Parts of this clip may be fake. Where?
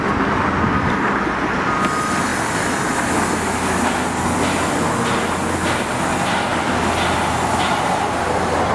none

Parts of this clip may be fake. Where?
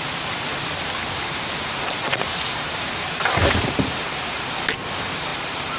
1.2-4.6 (vocoder, BigVGAN v2); 5.3-5.8